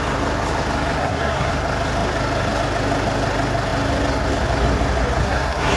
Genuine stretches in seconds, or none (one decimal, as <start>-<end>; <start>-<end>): 0.0-1.0; 1.5-5.2